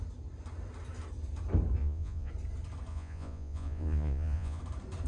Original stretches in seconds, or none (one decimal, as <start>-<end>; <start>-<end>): 0.0-1.8; 2.3-2.9; 4.6-5.1